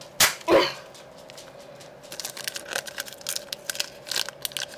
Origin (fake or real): real